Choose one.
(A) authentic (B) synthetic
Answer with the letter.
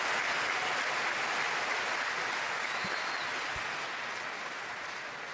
A